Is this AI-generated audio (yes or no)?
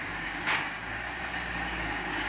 yes